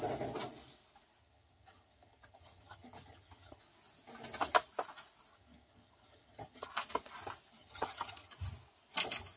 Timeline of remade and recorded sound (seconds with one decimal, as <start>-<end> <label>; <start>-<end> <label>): 0.0-1.2 recorded; 1.2-3.6 remade; 3.6-5.3 recorded; 5.3-6.7 remade; 6.7-7.6 recorded; 7.6-8.3 remade; 8.3-9.4 recorded